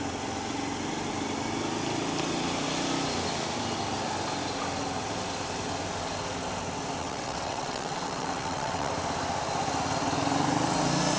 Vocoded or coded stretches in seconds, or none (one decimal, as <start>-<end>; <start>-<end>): 7.0-8.9